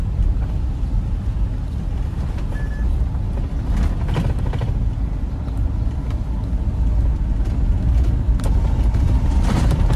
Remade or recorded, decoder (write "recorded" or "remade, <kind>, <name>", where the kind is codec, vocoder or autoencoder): recorded